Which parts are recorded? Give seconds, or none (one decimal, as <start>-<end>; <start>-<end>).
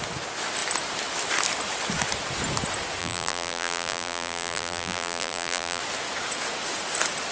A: 0.0-3.0; 5.8-7.3